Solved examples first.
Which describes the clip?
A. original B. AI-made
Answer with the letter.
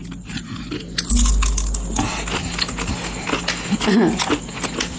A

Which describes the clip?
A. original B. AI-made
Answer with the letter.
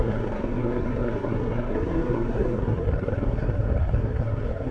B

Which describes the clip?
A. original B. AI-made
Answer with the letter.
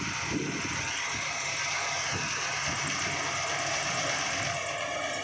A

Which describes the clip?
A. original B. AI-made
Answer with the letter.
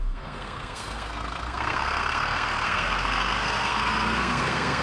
B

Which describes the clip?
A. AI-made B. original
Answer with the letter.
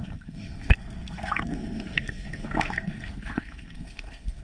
A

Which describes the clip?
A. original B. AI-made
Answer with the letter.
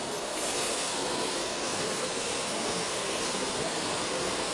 B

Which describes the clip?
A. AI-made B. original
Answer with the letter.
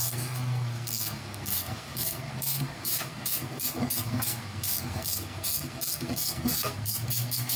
A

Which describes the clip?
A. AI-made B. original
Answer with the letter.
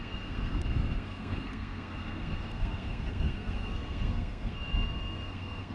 A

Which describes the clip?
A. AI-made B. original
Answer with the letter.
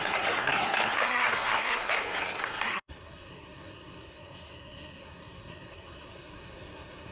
A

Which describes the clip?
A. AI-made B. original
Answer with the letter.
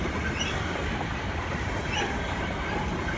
B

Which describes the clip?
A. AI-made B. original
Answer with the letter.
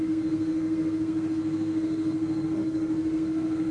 A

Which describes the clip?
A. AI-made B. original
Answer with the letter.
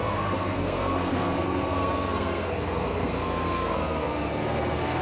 A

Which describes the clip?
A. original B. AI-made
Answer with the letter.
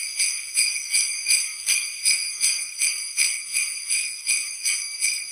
B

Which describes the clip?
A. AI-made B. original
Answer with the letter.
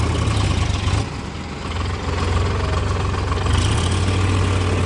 B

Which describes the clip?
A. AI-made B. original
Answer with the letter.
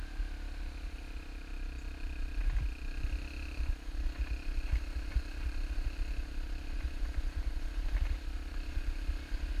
B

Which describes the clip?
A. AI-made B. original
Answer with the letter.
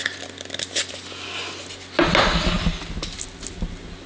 B